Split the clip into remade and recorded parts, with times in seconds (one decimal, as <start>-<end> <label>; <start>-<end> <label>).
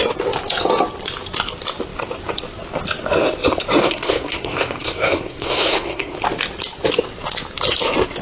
0.0-3.8 recorded; 3.8-6.2 remade; 6.2-8.2 recorded